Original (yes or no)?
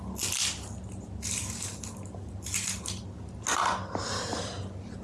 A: yes